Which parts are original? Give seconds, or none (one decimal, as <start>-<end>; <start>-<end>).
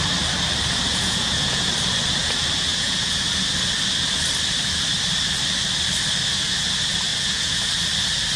0.0-0.9; 1.7-2.7; 3.2-7.1; 7.7-8.4